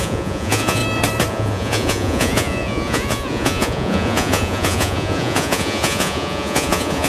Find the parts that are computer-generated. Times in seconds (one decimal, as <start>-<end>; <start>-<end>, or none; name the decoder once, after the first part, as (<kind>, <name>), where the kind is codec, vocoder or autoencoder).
0.0-0.8 (vocoder, Vocos); 1.3-7.1